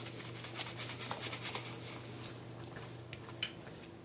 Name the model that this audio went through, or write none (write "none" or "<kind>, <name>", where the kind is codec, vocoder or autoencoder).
none